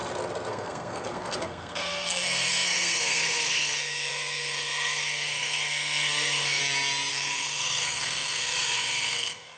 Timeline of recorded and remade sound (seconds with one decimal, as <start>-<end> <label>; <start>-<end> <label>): 0.0-0.5 recorded; 0.5-6.6 remade; 6.6-7.1 recorded; 7.1-9.6 remade